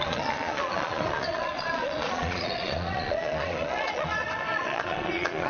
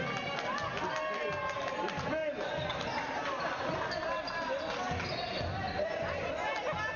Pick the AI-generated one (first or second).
first